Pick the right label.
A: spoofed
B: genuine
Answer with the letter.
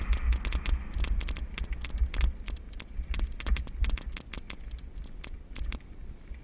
B